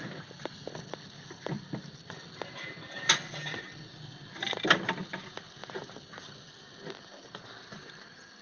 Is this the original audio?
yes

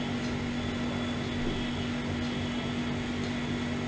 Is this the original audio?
yes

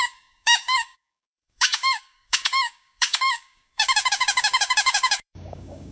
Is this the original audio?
no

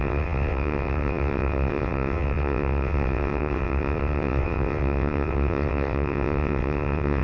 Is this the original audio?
no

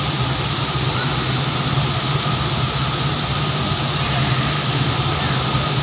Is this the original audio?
yes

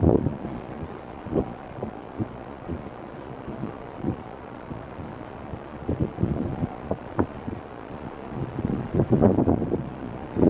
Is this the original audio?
no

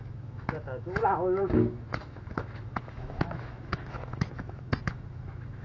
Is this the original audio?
no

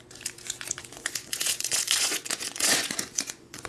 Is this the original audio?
no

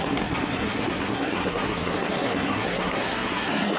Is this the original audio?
no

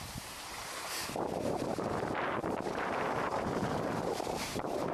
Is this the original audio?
no